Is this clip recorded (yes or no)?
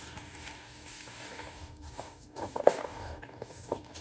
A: no